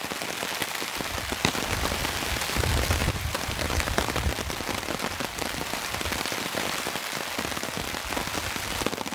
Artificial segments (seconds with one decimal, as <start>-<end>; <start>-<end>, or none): 0.6-2.0; 3.0-6.9